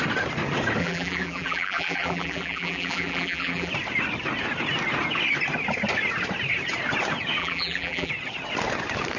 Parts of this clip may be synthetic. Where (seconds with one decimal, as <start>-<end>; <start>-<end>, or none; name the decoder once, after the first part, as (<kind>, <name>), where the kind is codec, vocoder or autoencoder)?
0.8-3.7 (vocoder, BigVGAN v2); 7.4-8.1